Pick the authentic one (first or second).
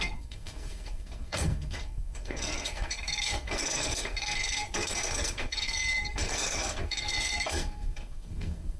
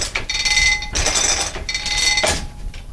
second